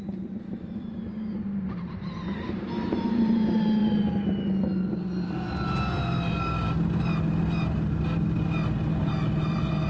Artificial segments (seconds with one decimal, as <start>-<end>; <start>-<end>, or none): 0.0-3.8; 8.9-9.9